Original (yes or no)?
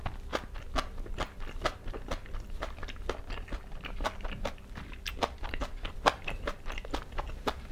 yes